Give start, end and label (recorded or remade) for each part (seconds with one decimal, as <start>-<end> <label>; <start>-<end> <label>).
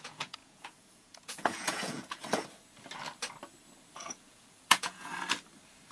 0.0-2.2 remade; 2.2-3.9 recorded; 3.9-5.1 remade; 5.1-5.9 recorded